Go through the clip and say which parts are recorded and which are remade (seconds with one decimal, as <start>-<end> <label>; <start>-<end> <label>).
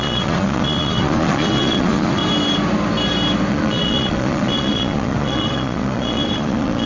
0.0-2.2 remade; 2.2-3.5 recorded; 3.5-6.9 remade